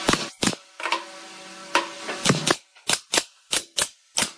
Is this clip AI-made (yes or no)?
no